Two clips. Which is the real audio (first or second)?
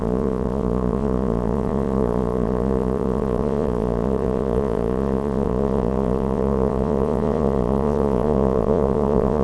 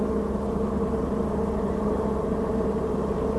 second